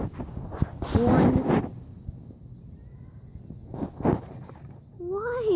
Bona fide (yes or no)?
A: yes